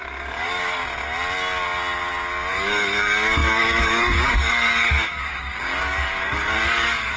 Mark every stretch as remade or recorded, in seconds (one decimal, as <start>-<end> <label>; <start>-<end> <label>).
0.0-0.8 remade; 0.8-2.5 recorded; 2.5-7.2 remade